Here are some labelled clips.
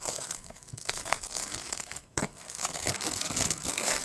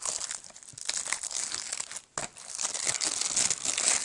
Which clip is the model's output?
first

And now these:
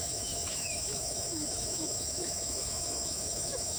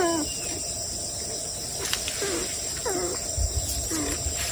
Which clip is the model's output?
first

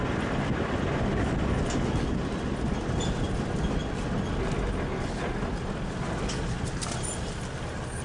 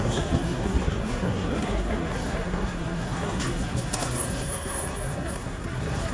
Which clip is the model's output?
second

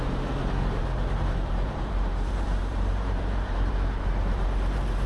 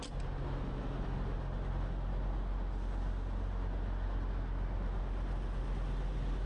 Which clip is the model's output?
first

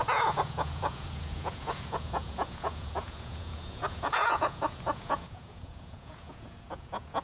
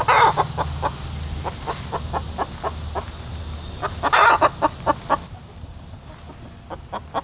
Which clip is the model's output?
first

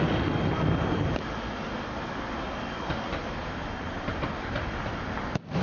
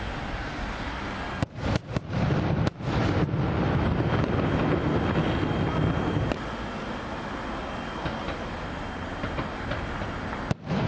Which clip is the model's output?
first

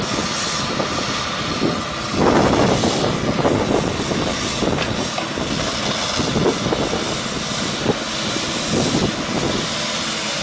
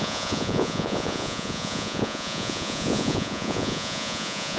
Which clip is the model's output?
second